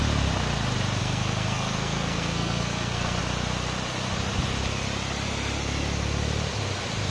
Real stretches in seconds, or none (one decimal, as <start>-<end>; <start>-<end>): 0.0-1.0; 3.2-7.1